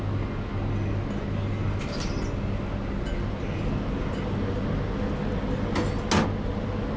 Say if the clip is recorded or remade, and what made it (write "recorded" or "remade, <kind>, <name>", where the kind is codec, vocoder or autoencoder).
recorded